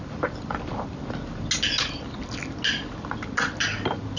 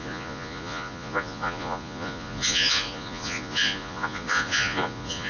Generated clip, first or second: second